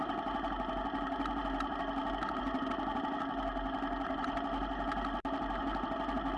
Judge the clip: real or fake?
real